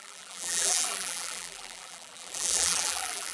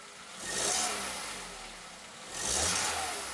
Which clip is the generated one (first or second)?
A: first